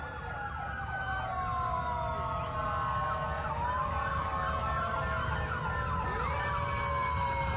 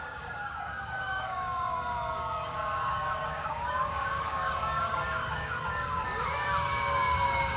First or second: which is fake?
second